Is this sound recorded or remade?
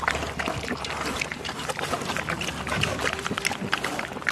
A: recorded